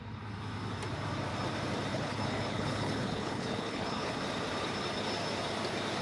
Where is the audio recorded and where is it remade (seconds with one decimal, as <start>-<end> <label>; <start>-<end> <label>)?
0.0-1.9 recorded; 1.9-4.1 remade; 4.1-6.0 recorded